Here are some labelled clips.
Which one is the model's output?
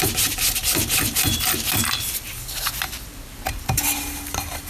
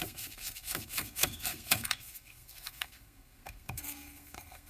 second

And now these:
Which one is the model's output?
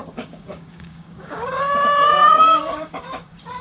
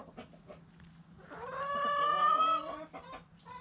first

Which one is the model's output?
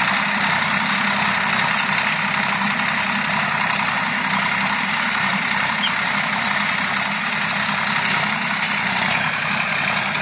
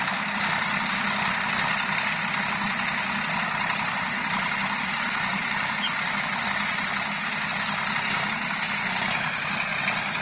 second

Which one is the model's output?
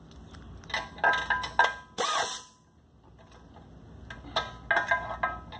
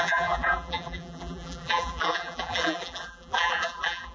second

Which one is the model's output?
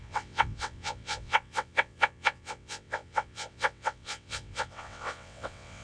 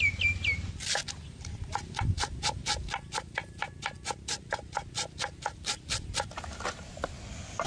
first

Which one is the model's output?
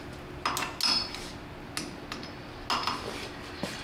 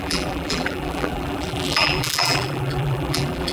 second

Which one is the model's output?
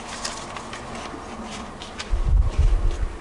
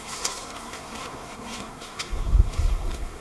second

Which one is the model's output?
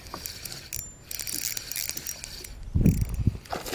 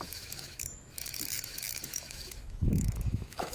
second